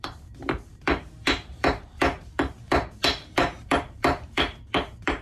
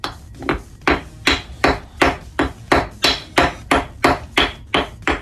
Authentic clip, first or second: second